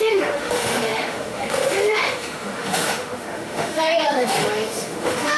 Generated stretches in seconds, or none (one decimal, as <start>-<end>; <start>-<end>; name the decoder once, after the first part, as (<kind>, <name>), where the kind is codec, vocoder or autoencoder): 0.0-5.4 (autoencoder, DAC-VAE)